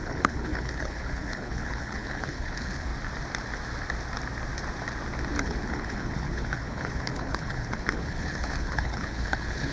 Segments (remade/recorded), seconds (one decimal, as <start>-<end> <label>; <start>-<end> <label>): 0.0-2.9 remade; 2.9-5.4 recorded; 5.4-9.7 remade